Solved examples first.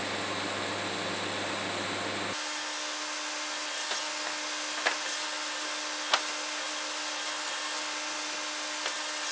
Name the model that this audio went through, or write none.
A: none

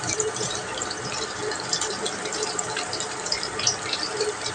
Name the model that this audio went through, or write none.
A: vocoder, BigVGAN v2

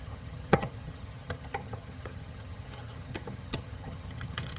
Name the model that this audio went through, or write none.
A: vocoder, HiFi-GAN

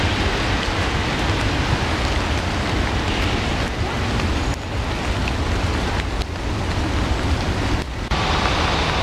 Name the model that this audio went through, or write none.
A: none